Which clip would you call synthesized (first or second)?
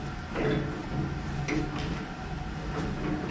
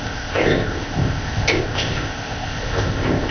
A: second